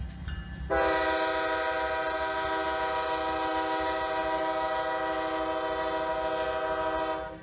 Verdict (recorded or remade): recorded